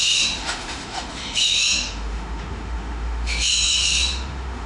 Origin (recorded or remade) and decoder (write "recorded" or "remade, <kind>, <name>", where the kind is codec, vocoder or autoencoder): remade, autoencoder, DAC-VAE